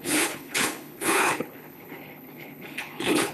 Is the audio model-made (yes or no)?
yes